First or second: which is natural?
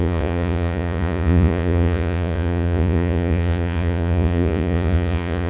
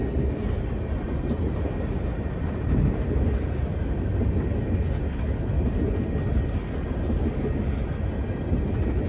second